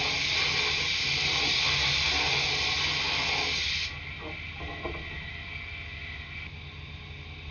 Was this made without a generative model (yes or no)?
yes